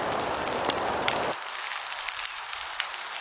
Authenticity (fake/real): real